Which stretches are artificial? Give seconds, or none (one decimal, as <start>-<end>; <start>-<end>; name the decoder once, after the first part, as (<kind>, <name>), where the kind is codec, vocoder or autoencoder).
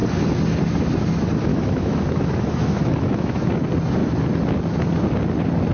1.5-3.5 (autoencoder, DAC-VAE)